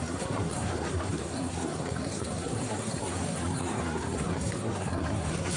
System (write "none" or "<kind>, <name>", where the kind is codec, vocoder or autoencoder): codec, SNAC